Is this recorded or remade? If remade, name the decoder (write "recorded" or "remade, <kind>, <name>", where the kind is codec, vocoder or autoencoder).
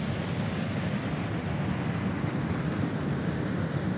recorded